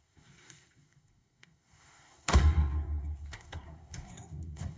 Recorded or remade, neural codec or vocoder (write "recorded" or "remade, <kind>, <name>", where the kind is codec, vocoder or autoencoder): remade, codec, SNAC